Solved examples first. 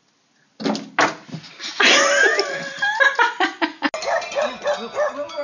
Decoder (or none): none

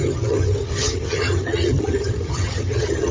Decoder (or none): vocoder, HiFi-GAN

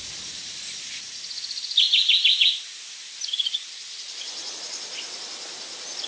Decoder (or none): none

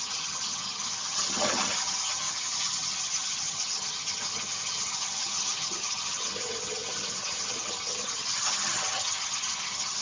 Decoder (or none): vocoder, HiFi-GAN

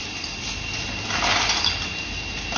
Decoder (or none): none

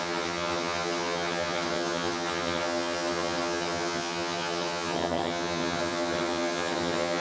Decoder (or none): vocoder, HiFi-GAN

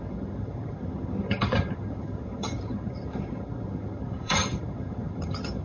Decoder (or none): vocoder, HiFi-GAN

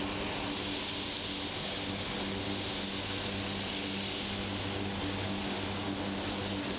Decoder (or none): none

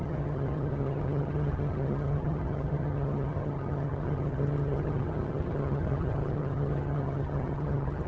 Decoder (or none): vocoder, HiFi-GAN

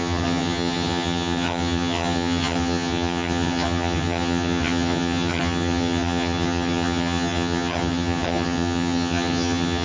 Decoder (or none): vocoder, HiFi-GAN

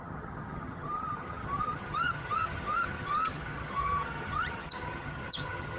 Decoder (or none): vocoder, HiFi-GAN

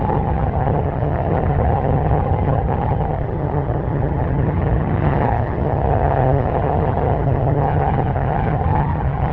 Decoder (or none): vocoder, HiFi-GAN